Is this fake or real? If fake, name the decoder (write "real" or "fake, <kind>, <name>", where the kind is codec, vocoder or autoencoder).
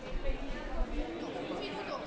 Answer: real